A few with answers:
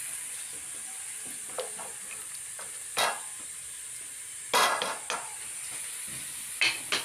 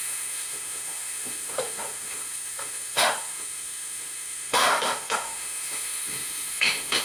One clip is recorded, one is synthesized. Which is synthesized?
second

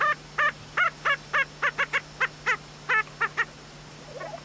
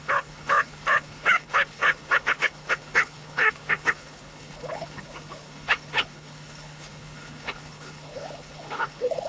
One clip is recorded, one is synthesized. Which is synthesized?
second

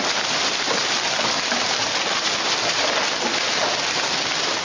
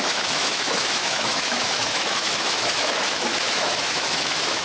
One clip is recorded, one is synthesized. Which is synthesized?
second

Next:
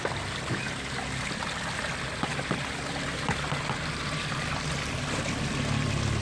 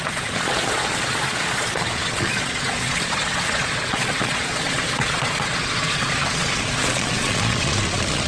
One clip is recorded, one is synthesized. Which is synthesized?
second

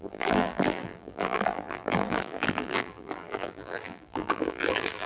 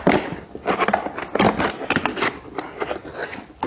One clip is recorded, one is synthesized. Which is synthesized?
first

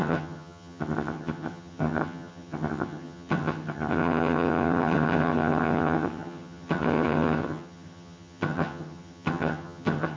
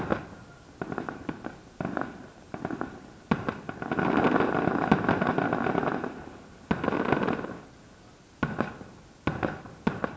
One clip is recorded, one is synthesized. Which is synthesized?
first